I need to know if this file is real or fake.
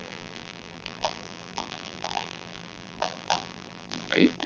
fake